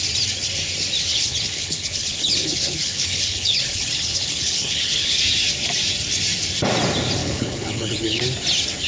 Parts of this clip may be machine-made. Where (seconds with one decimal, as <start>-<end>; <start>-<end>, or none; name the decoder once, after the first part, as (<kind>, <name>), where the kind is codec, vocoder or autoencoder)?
1.1-5.2 (codec, HILCodec); 7.2-8.2

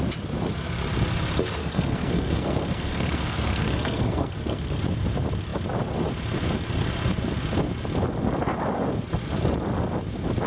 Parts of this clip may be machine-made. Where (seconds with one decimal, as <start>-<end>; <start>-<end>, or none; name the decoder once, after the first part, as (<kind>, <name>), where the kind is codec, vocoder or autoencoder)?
1.6-4.8 (codec, SNAC)